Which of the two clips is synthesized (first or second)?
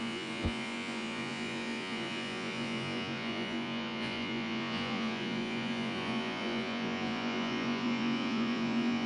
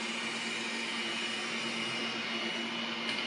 first